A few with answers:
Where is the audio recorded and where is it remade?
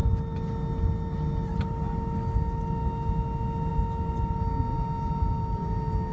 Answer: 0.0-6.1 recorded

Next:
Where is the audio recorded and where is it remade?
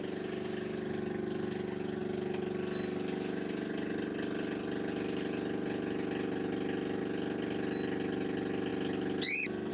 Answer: 0.0-9.7 recorded